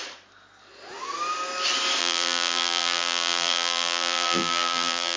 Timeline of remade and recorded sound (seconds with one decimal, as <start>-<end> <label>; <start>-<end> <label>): 0.0-2.0 recorded; 2.0-5.2 remade